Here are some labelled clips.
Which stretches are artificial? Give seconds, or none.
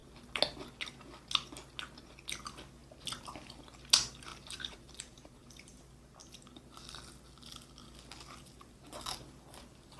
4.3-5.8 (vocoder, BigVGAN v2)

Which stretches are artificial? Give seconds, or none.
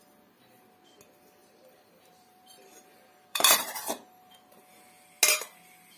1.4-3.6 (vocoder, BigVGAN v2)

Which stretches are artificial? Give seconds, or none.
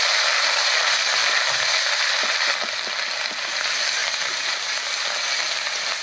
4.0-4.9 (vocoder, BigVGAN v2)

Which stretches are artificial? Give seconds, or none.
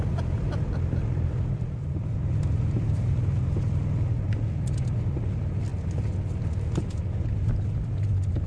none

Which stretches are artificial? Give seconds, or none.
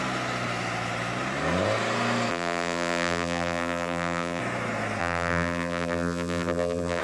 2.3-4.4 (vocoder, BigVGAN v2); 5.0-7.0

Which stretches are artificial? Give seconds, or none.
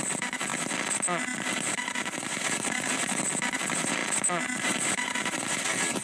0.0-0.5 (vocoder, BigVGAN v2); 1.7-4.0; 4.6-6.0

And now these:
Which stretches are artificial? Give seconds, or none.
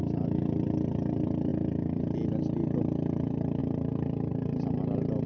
4.3-4.8 (vocoder, BigVGAN v2)